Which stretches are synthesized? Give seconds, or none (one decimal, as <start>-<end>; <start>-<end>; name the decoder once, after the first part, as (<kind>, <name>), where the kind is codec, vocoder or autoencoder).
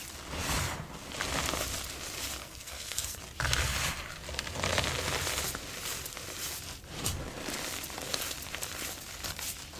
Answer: 2.4-3.2 (codec, SNAC)